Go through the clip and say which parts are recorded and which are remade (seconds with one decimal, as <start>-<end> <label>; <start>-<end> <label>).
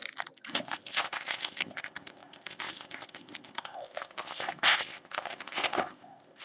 0.0-0.5 recorded; 0.5-6.4 remade